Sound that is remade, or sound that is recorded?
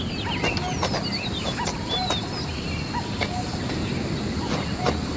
recorded